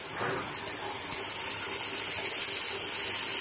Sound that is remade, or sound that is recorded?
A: recorded